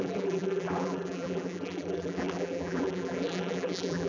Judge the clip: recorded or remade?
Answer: remade